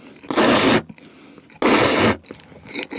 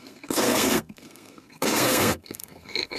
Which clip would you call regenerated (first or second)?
second